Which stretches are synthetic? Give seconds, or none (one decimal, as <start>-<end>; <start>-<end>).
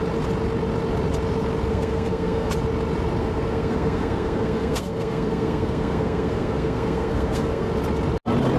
1.7-2.5; 3.2-7.7